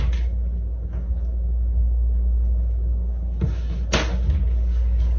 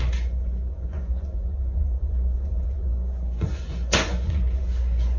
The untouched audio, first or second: first